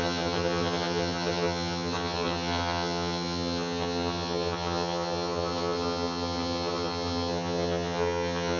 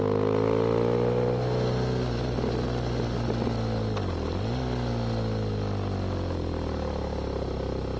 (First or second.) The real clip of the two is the second